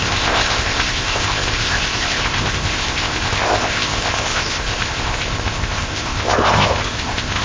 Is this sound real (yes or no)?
no